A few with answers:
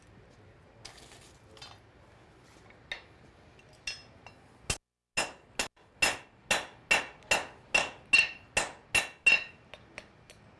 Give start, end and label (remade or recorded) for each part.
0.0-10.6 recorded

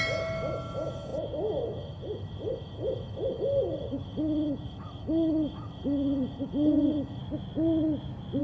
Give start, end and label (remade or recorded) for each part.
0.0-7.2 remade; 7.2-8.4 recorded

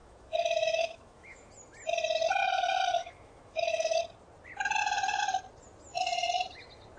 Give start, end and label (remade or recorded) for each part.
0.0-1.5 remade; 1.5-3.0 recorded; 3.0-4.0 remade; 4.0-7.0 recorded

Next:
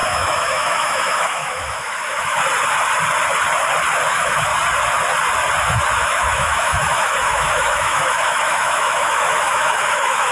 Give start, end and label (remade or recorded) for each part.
0.0-2.4 remade; 2.4-4.1 recorded; 4.1-4.5 remade; 4.5-6.0 recorded; 6.0-10.3 remade

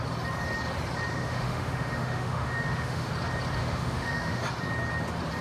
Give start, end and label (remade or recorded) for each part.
0.0-1.1 recorded; 1.1-3.1 remade; 3.1-3.6 recorded; 3.6-4.4 remade; 4.4-5.4 recorded

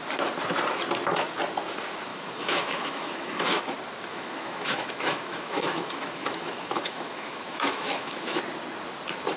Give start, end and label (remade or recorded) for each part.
0.0-2.1 recorded; 2.1-3.6 remade; 3.6-4.1 recorded; 4.1-8.4 remade; 8.4-9.4 recorded

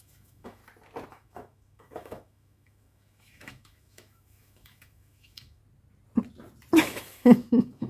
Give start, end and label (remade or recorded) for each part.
0.0-0.6 remade; 0.6-1.1 recorded; 1.1-5.6 remade; 5.6-6.8 recorded; 6.8-7.9 remade